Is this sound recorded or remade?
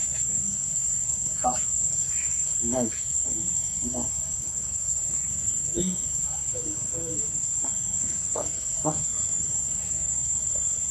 remade